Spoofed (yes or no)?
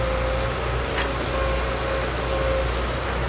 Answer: no